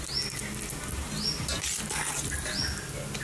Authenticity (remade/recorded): recorded